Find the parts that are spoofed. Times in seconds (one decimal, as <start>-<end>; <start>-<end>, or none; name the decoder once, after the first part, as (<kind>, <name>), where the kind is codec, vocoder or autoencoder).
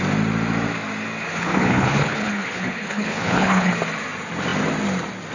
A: 1.3-3.7 (codec, HILCodec)